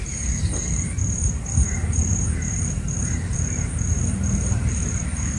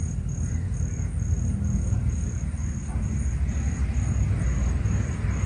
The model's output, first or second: first